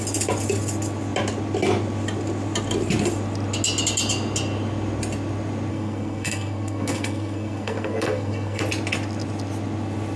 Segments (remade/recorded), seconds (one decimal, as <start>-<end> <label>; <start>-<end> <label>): 0.0-5.7 recorded; 5.7-8.6 remade; 8.6-10.2 recorded